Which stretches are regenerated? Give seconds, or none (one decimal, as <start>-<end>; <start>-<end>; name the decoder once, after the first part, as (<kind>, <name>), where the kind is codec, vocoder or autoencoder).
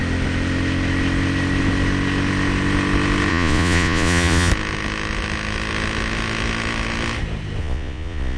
3.3-4.5 (vocoder, Vocos); 7.6-8.4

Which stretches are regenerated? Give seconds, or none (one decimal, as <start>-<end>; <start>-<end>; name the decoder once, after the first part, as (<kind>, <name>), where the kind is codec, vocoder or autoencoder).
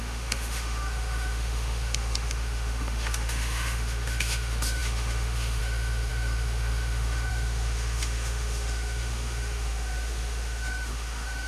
0.0-11.5 (autoencoder, DAC-VAE)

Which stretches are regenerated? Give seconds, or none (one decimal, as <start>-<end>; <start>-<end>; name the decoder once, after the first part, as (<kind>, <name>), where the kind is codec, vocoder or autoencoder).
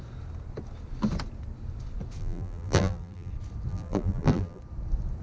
2.2-3.3 (vocoder, BigVGAN v2); 3.7-4.6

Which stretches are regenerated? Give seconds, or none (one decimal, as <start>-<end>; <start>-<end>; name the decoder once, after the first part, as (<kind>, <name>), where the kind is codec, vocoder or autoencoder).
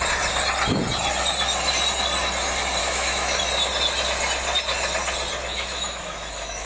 2.8-3.4 (autoencoder, DAC-VAE); 5.5-6.7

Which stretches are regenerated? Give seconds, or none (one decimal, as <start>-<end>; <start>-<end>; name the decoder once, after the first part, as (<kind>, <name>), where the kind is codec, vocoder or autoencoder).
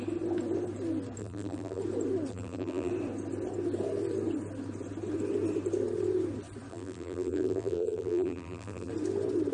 1.2-1.8 (vocoder, BigVGAN v2); 2.3-2.9; 6.7-8.9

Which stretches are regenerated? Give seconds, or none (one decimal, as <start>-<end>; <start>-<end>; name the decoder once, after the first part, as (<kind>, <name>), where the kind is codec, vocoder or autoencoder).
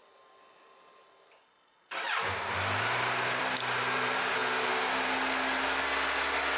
none